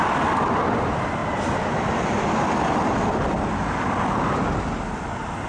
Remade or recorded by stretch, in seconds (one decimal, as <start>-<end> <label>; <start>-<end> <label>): 0.0-5.5 recorded